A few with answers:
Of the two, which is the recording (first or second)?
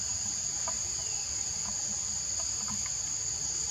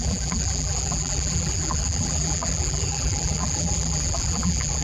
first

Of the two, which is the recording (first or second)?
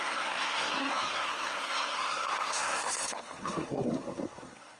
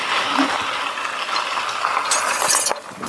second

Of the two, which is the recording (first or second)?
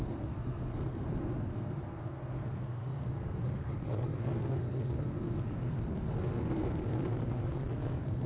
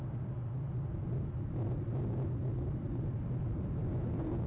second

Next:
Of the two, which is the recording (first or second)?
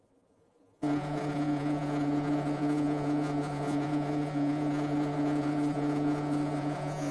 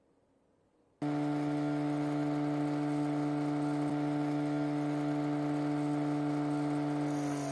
second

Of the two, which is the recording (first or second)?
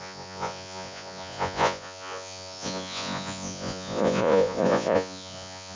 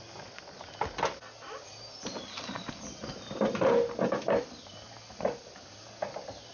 second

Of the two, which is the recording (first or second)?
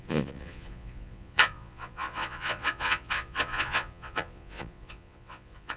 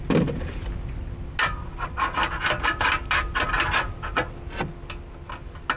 second